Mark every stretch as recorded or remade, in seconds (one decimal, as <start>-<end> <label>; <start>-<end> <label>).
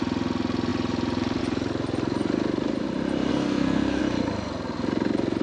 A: 0.0-3.3 recorded; 3.3-4.0 remade; 4.0-5.4 recorded